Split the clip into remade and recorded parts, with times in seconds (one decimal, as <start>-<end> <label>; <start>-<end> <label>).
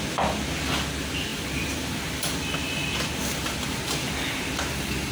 0.0-1.3 recorded; 1.3-4.4 remade; 4.4-5.1 recorded